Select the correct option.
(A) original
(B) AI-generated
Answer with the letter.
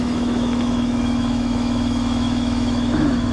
B